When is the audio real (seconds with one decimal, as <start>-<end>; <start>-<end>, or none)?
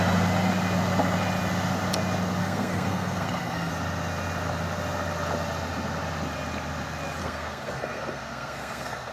0.0-2.4; 3.7-7.2